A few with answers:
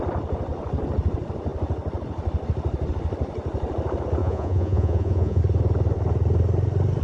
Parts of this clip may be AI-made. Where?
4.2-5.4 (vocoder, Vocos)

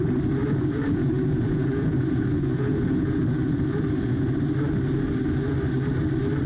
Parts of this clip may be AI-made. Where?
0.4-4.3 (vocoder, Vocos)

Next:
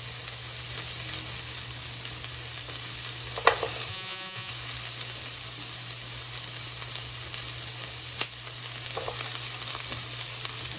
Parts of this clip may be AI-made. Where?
3.9-4.5 (vocoder, Vocos)

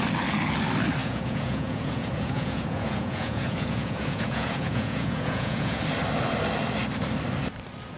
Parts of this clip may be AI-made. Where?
1.0-5.8 (vocoder, Vocos)

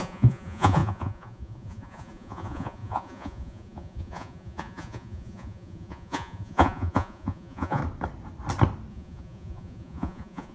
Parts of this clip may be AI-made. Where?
0.0-7.8 (vocoder, Vocos); 8.9-10.5

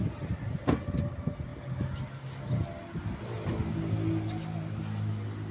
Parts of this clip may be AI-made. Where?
none

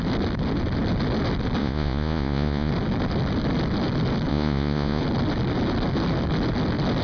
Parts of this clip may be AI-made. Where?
1.6-2.7 (vocoder, Vocos); 4.3-5.0